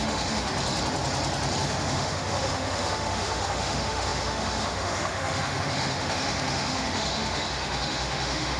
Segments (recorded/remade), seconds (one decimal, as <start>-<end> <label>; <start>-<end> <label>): 0.0-0.5 remade; 0.5-1.6 recorded; 1.6-8.6 remade